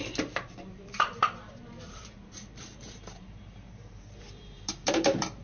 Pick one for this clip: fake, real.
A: fake